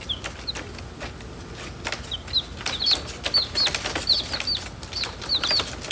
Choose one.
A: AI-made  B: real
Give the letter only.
B